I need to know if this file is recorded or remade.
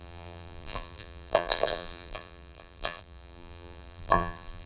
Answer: remade